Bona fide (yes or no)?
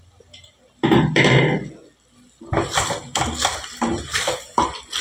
yes